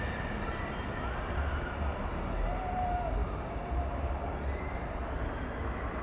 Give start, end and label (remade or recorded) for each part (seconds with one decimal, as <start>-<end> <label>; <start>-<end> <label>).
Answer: 0.0-3.2 recorded; 3.2-3.9 remade; 3.9-6.0 recorded